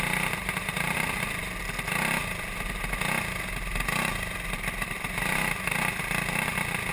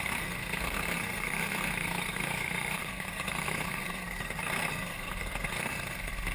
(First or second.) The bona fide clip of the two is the first